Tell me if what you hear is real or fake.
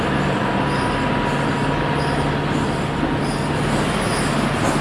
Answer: real